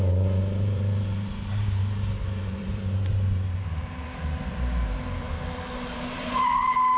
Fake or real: fake